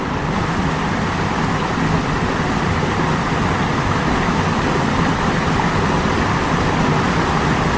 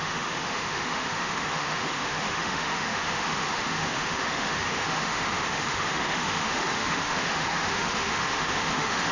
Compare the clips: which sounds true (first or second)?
first